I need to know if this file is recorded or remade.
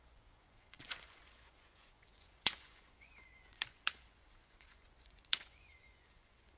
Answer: remade